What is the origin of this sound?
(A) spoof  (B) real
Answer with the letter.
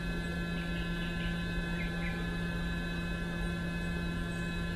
B